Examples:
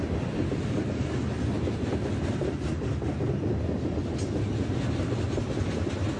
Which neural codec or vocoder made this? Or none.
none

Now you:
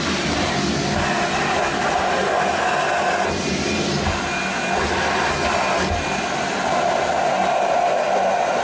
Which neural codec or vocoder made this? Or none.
none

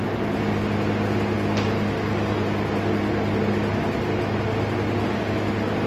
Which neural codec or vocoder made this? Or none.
none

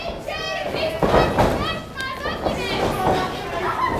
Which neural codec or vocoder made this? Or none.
none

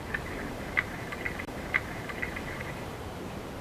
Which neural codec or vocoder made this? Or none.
vocoder, BigVGAN v2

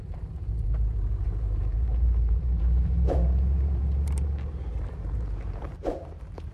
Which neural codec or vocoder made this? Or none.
vocoder, BigVGAN v2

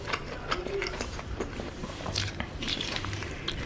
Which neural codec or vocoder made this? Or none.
vocoder, BigVGAN v2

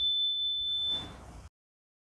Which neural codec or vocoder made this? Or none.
none